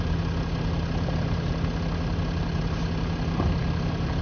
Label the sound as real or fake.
real